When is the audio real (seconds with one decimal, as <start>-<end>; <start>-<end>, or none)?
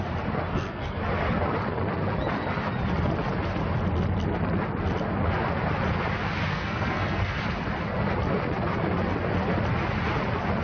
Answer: 0.0-0.5; 1.0-6.5; 7.4-10.6